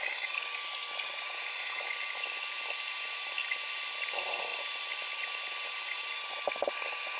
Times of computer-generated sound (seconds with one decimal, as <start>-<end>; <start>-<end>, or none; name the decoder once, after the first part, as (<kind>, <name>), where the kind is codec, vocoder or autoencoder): none